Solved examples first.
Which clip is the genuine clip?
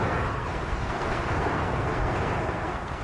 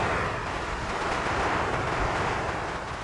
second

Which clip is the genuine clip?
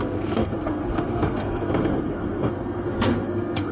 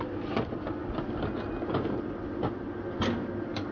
second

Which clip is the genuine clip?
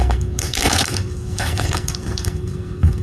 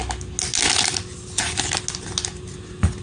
second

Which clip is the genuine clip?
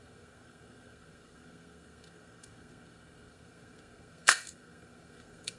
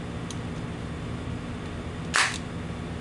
second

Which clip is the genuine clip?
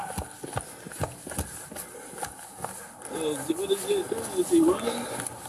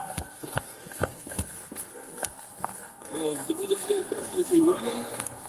first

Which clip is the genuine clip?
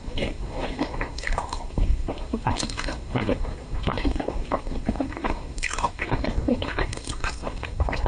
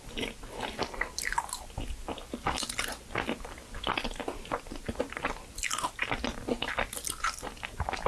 second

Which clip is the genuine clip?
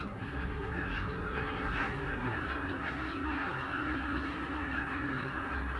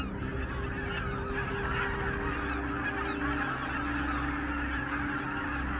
second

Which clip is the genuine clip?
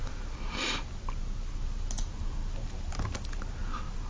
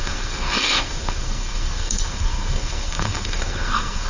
first